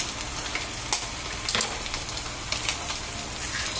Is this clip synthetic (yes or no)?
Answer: no